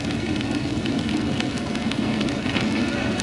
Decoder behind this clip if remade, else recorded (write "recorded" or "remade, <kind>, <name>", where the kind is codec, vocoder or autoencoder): remade, codec, SNAC